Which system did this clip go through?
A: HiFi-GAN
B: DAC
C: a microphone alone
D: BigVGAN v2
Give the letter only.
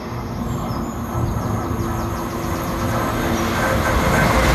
C